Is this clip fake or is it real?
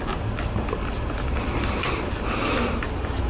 real